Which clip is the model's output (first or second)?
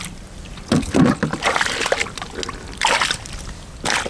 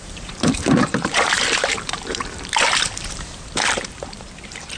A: second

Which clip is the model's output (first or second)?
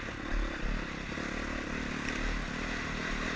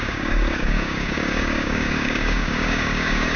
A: second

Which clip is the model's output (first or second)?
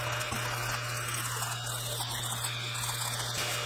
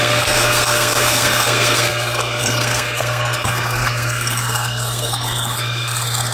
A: second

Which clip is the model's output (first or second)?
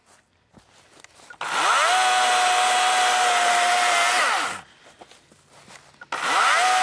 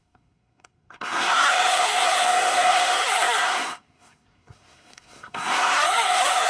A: second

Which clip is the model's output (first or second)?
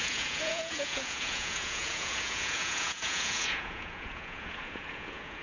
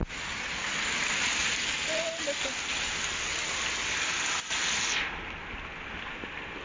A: first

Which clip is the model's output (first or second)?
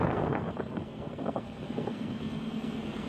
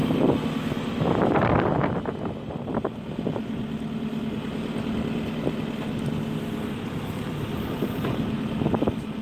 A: first